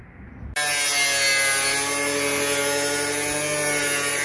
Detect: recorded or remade recorded